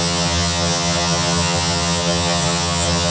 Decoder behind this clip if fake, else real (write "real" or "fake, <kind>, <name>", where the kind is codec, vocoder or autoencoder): fake, vocoder, HiFi-GAN